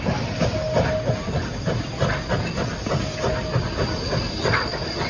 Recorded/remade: recorded